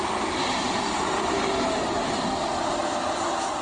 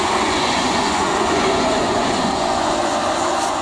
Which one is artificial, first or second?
second